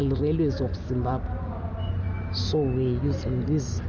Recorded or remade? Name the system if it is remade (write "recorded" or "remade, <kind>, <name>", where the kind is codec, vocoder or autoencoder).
recorded